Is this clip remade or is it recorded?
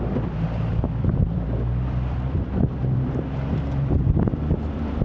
remade